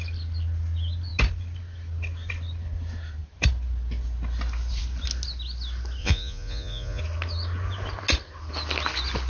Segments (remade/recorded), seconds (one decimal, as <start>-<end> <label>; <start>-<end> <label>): 0.0-6.0 recorded; 6.0-7.0 remade; 7.0-9.3 recorded